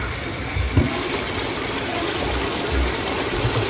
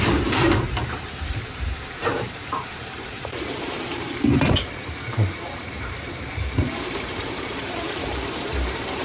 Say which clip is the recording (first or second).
first